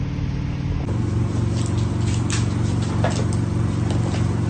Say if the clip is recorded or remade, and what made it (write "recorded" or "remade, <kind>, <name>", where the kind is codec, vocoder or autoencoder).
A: recorded